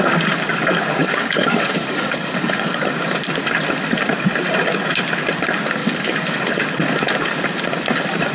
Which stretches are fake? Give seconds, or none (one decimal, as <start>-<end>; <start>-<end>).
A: 1.0-2.9; 5.8-6.4